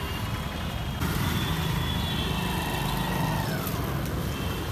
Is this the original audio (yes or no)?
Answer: yes